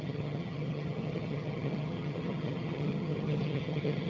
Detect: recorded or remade remade